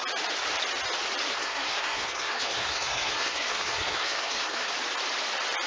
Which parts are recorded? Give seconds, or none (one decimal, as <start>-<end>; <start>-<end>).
0.0-1.3; 4.7-5.7